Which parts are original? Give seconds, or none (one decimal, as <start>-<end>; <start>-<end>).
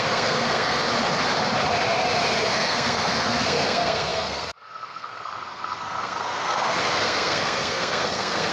0.8-2.5